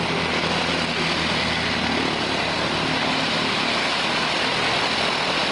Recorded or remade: recorded